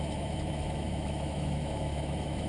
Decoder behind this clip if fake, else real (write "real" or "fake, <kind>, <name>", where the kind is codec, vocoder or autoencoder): fake, autoencoder, DAC-VAE